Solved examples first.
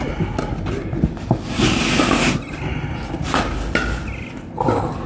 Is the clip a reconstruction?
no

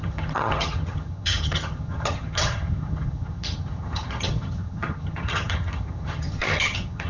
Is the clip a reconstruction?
yes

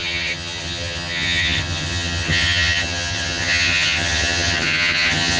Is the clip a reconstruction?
yes